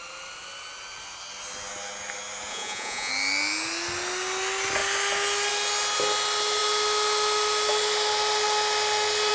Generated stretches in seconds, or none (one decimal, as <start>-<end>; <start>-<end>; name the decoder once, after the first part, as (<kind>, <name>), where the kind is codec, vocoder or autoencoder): 2.5-3.1 (vocoder, Vocos)